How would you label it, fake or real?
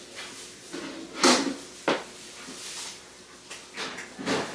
real